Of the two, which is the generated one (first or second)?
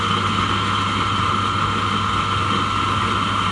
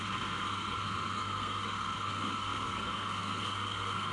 second